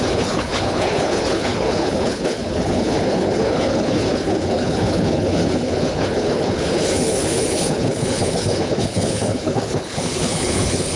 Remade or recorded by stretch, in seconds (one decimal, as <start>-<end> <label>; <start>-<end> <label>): 0.0-11.0 remade